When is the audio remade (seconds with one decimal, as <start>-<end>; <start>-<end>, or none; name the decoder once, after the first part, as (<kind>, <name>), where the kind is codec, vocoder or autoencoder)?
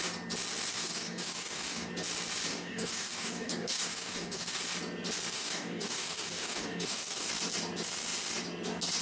0.7-1.9 (codec, DAC); 2.5-4.6; 5.3-7.3